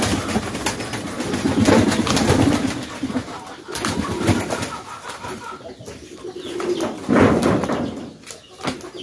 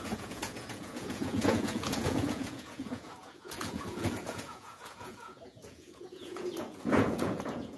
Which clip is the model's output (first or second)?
second